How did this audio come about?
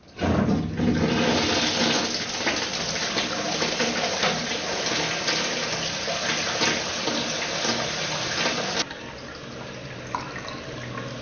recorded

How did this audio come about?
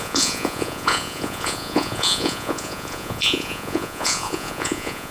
remade